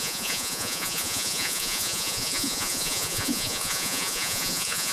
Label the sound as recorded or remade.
remade